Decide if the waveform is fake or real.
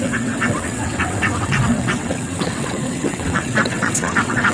fake